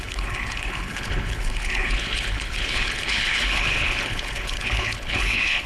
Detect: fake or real fake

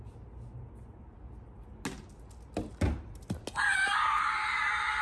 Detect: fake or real real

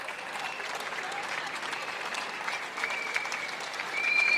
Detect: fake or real fake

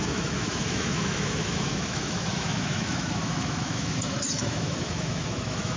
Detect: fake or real fake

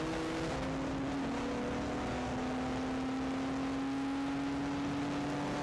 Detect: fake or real real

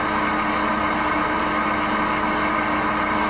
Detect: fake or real real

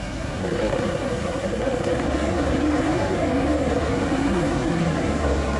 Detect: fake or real fake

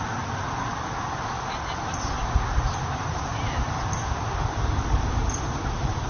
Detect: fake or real real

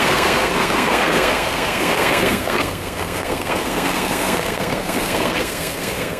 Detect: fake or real fake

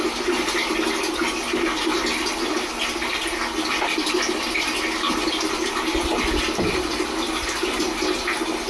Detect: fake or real real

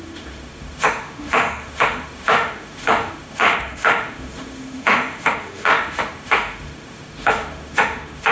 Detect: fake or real fake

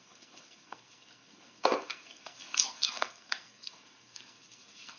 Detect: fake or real fake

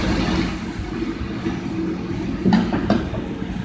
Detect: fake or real real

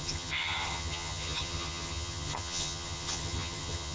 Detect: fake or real fake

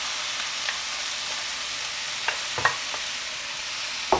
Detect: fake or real real